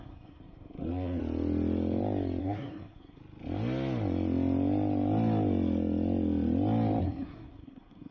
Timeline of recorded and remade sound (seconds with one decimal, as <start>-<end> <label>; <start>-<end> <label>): 0.0-1.2 remade; 1.2-2.4 recorded; 2.4-3.2 remade; 3.2-7.0 recorded; 7.0-8.1 remade